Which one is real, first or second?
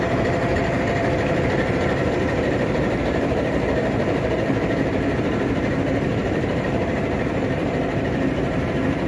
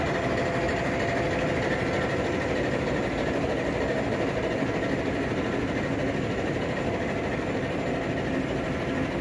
second